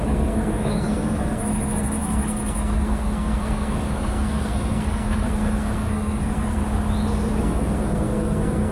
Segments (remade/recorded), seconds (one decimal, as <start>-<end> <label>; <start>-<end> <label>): 0.0-6.6 remade; 6.6-7.4 recorded; 7.4-8.7 remade